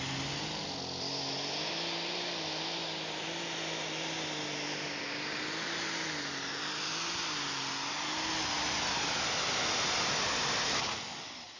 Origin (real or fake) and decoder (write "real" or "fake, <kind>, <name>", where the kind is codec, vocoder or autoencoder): real